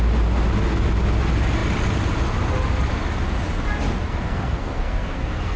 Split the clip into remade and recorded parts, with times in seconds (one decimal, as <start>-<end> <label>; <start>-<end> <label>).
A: 0.0-4.1 recorded; 4.1-5.6 remade